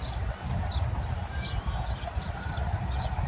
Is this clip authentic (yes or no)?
yes